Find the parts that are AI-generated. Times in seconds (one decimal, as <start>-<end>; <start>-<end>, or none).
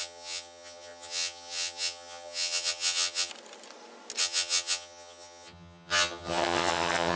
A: 0.0-3.3; 4.2-7.2